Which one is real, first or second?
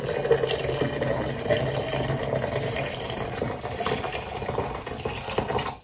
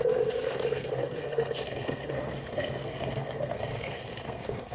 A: first